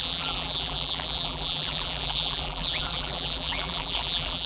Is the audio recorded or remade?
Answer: remade